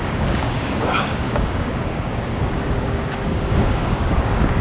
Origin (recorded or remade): remade